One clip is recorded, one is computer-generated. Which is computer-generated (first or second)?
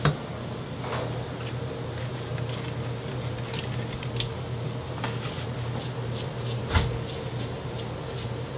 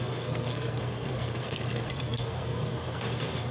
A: second